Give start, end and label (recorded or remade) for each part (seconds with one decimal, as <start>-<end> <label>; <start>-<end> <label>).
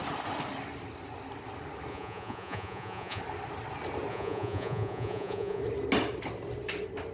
0.0-1.9 recorded; 1.9-3.2 remade; 3.2-4.1 recorded; 4.1-5.6 remade; 5.6-7.1 recorded